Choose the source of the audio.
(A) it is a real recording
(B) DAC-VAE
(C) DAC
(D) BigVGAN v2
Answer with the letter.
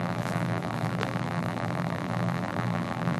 D